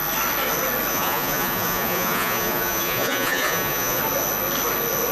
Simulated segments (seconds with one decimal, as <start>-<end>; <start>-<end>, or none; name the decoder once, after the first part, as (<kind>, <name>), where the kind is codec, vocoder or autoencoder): 0.9-4.0 (vocoder, Vocos)